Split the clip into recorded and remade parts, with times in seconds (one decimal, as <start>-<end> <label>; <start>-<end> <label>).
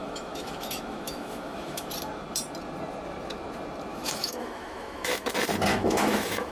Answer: 0.0-1.9 remade; 1.9-3.9 recorded; 3.9-5.3 remade; 5.3-5.7 recorded; 5.7-6.5 remade